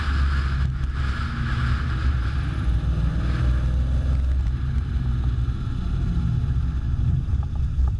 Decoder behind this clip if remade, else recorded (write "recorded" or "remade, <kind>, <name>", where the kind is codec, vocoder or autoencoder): recorded